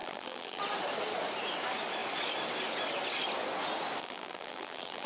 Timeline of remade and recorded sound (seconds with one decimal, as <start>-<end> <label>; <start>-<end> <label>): 0.0-0.6 remade; 0.6-4.0 recorded; 4.0-5.1 remade